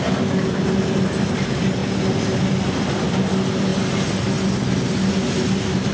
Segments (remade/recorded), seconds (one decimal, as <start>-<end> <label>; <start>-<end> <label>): 0.0-5.9 recorded